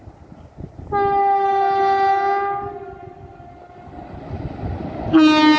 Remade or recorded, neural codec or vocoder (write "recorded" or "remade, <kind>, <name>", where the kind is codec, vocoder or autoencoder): recorded